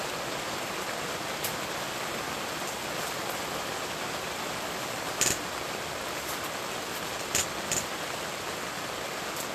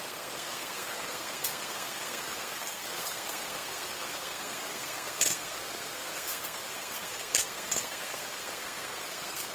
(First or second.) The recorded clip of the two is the first